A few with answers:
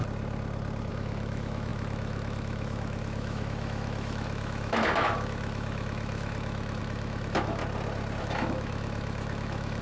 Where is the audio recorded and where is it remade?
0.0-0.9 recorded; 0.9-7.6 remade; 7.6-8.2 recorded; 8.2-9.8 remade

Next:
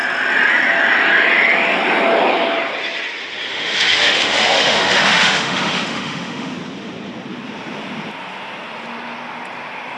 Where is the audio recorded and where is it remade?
0.0-3.5 recorded; 3.5-6.5 remade; 6.5-10.0 recorded

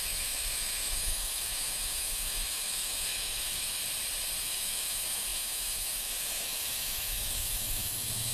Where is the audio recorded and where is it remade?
0.0-3.8 remade; 3.8-4.4 recorded; 4.4-8.3 remade

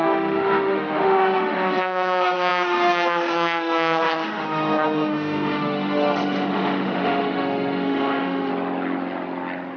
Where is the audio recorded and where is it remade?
0.0-8.5 remade; 8.5-9.8 recorded

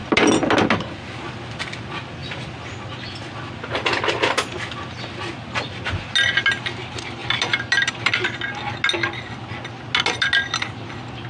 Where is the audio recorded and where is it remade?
0.0-11.3 recorded

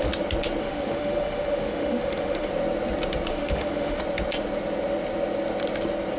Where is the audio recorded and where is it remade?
0.0-0.6 recorded; 0.6-2.5 remade; 2.5-3.3 recorded; 3.3-4.0 remade; 4.0-6.2 recorded